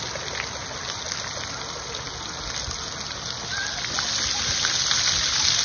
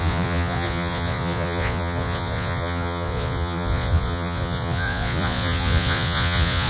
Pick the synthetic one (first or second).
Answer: second